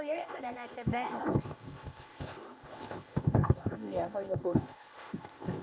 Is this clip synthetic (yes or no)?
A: yes